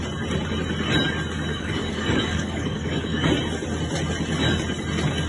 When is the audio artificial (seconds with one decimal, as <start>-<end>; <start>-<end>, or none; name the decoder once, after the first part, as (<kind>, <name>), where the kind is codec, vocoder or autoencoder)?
1.5-3.3 (codec, DAC)